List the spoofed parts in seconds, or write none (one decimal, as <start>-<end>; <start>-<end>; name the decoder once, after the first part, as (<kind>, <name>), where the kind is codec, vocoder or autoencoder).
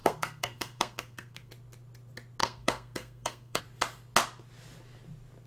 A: 0.0-1.5 (codec, SNAC); 2.4-3.6